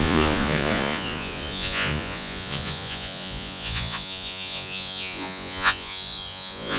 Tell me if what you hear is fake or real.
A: fake